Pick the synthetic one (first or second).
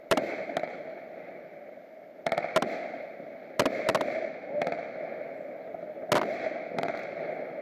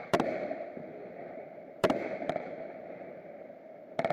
second